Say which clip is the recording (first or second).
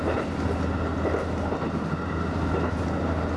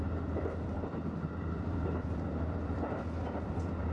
first